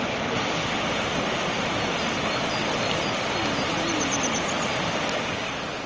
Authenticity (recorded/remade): recorded